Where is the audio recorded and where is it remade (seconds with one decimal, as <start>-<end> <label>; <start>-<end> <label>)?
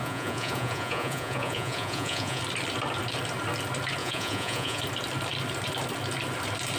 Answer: 0.0-2.4 remade; 2.4-4.0 recorded; 4.0-4.8 remade; 4.8-6.8 recorded